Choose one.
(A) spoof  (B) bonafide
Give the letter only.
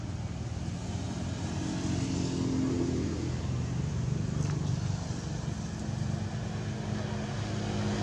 B